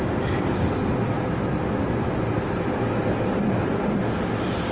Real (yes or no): yes